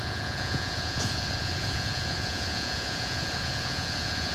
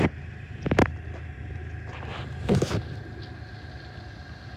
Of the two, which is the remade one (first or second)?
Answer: first